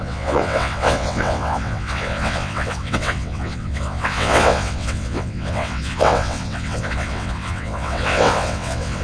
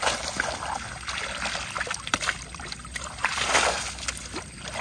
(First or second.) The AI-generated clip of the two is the first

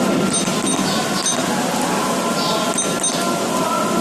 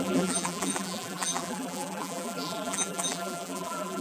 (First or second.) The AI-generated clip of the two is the second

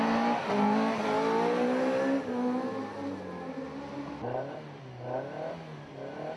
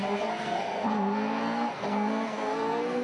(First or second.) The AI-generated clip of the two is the second